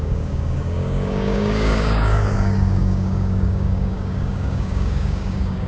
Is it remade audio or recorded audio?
remade